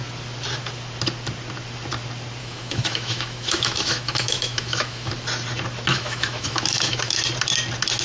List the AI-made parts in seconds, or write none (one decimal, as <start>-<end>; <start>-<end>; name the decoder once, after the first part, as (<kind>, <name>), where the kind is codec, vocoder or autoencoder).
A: 2.4-5.1 (autoencoder, DAC-VAE); 5.9-7.2